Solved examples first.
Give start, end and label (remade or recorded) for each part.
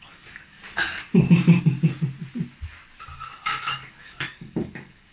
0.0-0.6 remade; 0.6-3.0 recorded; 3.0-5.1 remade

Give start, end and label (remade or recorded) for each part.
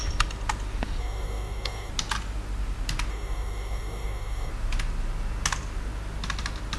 0.0-1.0 recorded; 1.0-1.9 remade; 1.9-3.1 recorded; 3.1-4.5 remade; 4.5-6.8 recorded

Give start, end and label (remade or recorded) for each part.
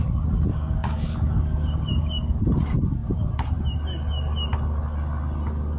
0.0-0.5 recorded; 0.5-2.4 remade; 2.4-5.8 recorded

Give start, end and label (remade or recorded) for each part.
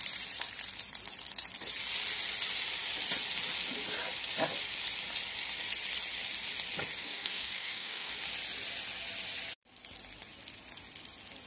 0.0-7.0 recorded; 7.0-8.1 remade; 8.1-11.5 recorded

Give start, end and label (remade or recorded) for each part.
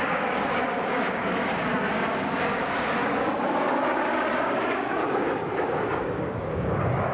0.0-7.1 remade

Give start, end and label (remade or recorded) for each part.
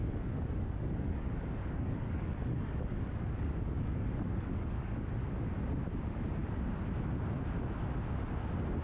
0.0-5.1 remade; 5.1-8.8 recorded